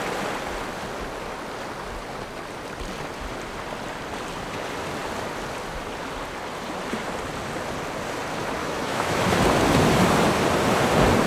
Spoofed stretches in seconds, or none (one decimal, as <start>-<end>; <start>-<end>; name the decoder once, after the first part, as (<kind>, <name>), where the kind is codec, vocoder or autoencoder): 8.6-9.2 (autoencoder, DAC-VAE)